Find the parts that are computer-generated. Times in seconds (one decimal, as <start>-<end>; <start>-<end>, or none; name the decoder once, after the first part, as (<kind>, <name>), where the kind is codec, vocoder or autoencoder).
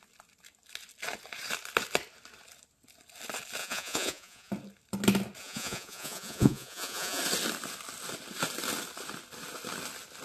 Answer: 3.6-4.5 (vocoder, Vocos); 5.4-7.2